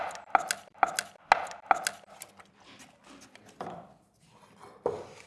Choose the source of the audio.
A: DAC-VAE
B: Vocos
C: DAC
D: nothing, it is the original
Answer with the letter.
D